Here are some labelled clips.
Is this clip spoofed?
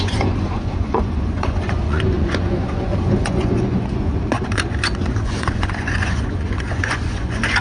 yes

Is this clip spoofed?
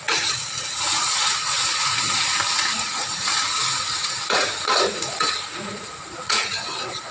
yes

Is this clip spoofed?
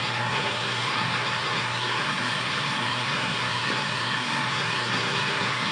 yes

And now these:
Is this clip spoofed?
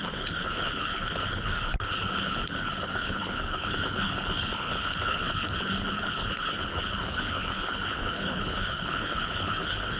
yes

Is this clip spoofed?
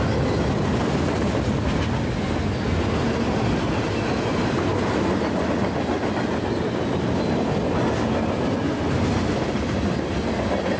no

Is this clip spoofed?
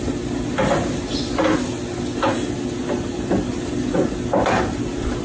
no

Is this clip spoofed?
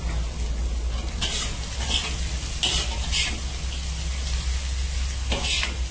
no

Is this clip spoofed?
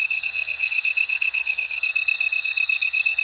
yes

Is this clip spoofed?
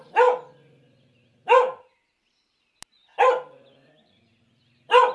no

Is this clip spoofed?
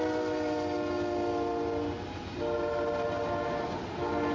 no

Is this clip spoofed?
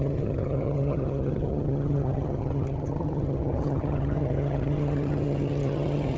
yes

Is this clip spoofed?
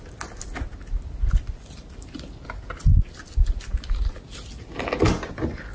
no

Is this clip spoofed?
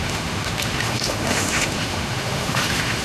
yes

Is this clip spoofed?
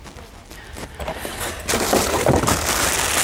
no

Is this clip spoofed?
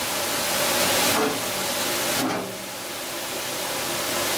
no